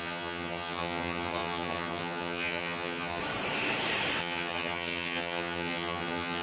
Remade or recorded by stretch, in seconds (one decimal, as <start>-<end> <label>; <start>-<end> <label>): 0.0-3.2 remade; 3.2-4.2 recorded; 4.2-6.4 remade